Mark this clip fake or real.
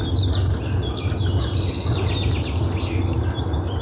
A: real